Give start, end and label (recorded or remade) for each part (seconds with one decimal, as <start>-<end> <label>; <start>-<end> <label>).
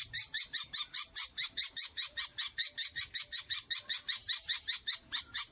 0.0-2.3 remade; 2.3-3.4 recorded; 3.4-5.5 remade